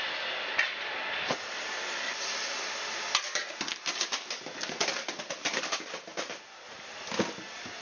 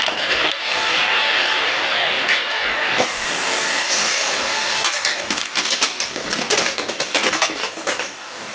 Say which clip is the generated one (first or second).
second